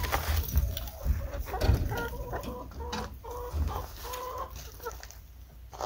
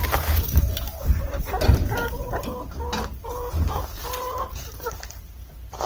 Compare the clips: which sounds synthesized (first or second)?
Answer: second